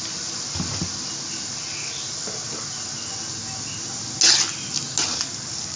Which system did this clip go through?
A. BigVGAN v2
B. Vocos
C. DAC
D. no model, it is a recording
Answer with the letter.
D